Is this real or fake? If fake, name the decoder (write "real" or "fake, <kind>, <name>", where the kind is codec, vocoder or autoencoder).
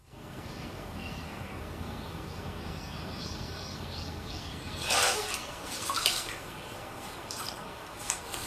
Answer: fake, codec, SNAC